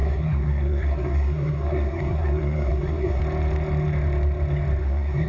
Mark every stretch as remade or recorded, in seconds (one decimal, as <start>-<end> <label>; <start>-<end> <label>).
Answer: 0.0-3.2 remade; 3.2-4.8 recorded; 4.8-5.3 remade